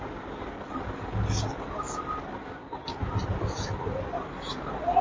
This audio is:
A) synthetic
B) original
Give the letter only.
B